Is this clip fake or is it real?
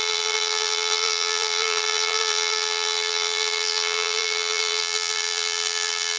fake